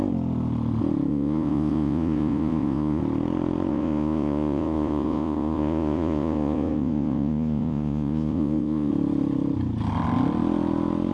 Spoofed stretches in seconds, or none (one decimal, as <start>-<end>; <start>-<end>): 1.1-3.0; 3.7-8.9